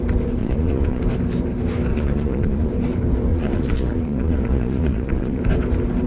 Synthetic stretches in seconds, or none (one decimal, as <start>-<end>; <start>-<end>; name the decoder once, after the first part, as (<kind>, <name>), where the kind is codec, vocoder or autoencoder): 0.4-1.0 (vocoder, Vocos); 1.9-2.7; 3.3-5.4